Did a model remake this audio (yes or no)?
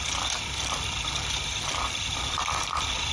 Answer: no